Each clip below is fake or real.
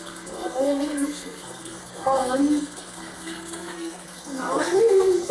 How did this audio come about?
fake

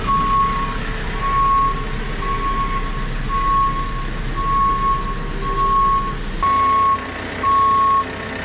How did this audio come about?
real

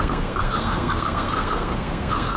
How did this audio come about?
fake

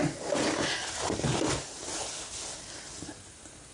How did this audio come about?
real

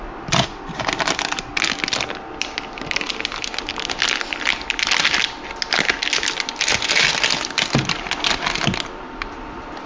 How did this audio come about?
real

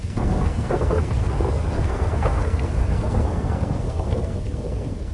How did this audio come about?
fake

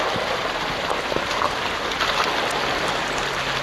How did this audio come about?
real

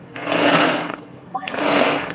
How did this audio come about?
fake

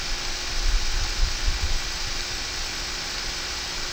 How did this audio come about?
real